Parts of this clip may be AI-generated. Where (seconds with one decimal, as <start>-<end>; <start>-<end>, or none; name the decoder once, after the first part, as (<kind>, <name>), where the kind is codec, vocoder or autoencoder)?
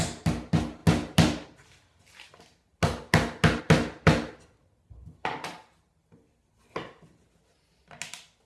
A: none